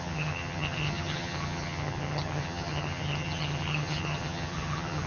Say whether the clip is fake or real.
fake